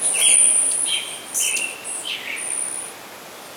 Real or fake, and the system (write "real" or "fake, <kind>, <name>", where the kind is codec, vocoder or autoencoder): real